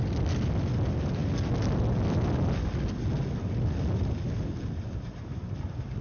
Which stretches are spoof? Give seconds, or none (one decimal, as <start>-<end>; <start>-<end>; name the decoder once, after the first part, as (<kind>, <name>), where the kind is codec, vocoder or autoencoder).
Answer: none